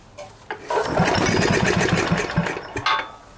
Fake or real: real